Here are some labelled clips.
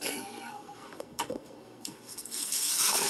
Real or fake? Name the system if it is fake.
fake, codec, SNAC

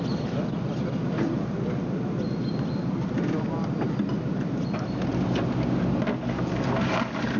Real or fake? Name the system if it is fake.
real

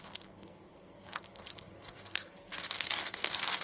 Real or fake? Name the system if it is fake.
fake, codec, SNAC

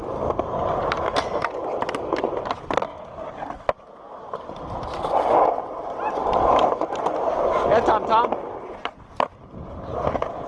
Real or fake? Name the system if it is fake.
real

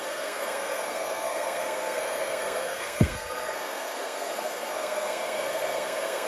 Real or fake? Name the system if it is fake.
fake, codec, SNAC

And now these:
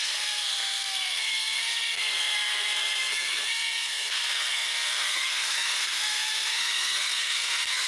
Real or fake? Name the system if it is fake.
fake, codec, SNAC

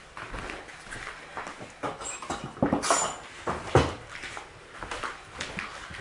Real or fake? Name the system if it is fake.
real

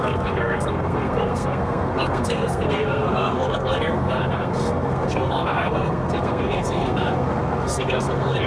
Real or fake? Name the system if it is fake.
fake, codec, SNAC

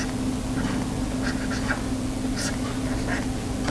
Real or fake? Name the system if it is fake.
real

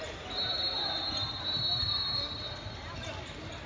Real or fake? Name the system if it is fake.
real